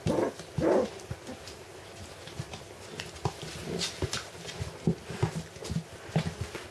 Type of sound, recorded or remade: recorded